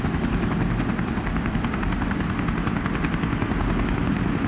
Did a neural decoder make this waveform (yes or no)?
no